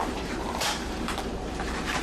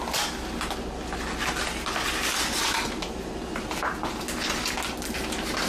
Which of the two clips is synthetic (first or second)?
first